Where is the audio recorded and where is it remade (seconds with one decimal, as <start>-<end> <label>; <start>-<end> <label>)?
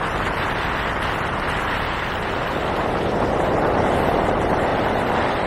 0.0-5.5 remade